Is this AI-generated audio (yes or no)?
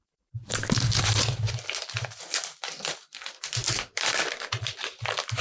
yes